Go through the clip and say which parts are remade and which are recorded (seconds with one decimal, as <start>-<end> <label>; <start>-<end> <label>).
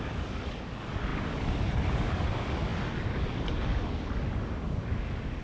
0.0-5.4 remade